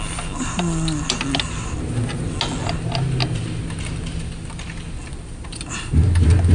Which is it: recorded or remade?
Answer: recorded